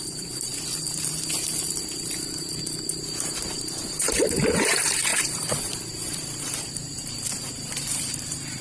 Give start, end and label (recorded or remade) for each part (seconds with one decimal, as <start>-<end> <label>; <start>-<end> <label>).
0.0-0.5 remade; 0.5-2.6 recorded; 2.6-8.6 remade